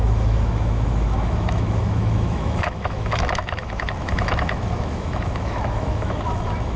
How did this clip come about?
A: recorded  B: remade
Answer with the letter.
B